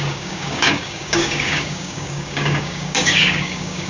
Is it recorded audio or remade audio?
remade